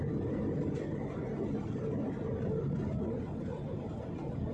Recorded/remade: recorded